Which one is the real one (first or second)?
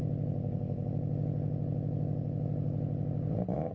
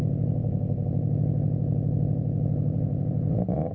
first